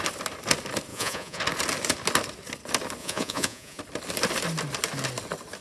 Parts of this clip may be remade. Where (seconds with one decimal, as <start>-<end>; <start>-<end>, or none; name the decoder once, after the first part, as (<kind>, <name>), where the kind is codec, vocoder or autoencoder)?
0.9-1.4 (vocoder, Vocos); 3.0-3.8